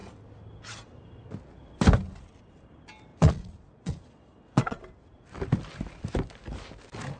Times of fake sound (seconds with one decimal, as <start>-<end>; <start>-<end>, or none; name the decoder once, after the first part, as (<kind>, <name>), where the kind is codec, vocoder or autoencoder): 3.1-4.8 (vocoder, Vocos)